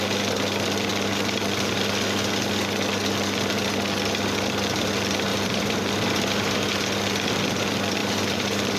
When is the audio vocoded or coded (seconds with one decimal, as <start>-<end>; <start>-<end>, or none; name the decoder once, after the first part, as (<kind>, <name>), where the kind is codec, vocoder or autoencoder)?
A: 5.3-5.9 (vocoder, BigVGAN v2); 8.0-8.8